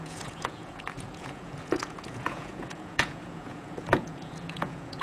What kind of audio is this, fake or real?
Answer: fake